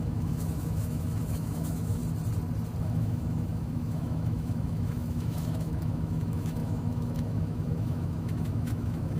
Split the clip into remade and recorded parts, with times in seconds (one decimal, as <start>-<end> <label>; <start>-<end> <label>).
0.0-2.0 remade; 2.0-2.8 recorded; 2.8-9.2 remade